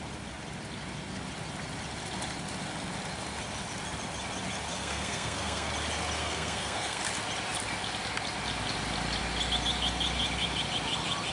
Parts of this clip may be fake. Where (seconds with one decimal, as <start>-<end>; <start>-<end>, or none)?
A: 4.7-5.7; 6.2-7.0

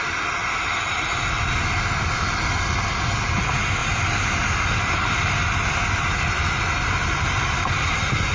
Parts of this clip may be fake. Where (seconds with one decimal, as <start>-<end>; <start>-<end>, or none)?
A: 0.4-1.2; 3.8-5.1; 7.0-8.3

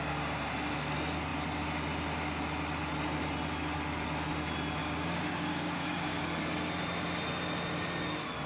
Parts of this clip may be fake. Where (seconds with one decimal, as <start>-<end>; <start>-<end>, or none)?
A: 4.8-6.2

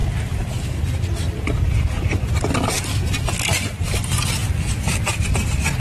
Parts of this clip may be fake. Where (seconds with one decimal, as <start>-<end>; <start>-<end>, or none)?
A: 0.0-2.9; 4.4-5.1

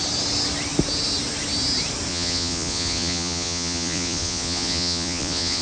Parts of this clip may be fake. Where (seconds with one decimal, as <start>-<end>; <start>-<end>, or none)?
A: 2.1-5.6

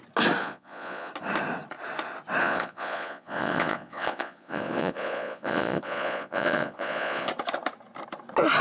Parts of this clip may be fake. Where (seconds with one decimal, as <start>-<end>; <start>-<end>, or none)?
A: 0.4-1.1; 2.4-7.3

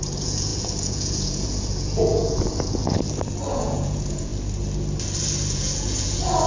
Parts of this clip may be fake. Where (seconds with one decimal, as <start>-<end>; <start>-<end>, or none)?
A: 0.0-2.8; 3.5-4.3; 5.5-6.5

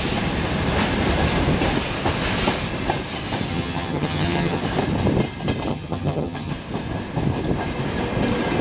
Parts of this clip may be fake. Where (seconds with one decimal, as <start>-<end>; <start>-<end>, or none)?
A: 3.5-4.6; 5.7-6.5